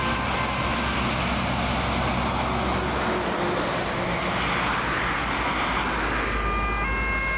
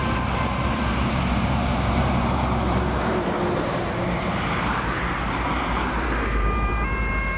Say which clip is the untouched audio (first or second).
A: first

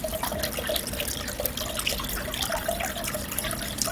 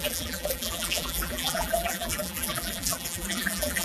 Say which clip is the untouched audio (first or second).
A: first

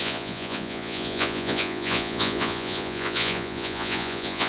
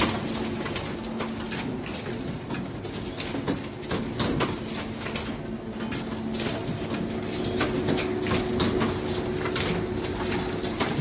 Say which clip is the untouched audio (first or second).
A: second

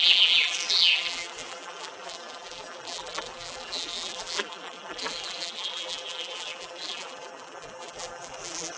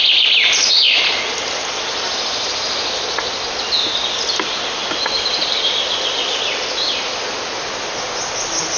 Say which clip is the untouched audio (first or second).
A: second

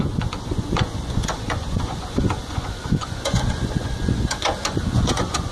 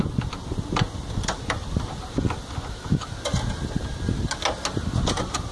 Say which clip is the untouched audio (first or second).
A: second